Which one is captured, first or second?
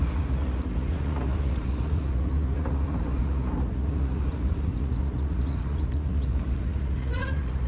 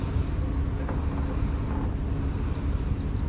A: second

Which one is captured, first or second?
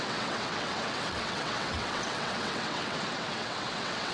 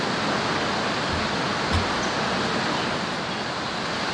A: second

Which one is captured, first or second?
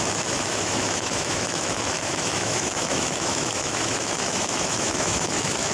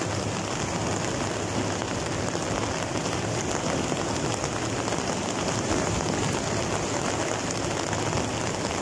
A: second